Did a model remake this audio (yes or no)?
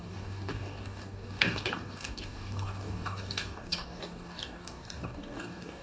yes